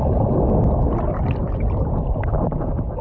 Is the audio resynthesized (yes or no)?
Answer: no